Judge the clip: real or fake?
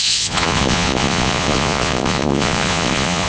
fake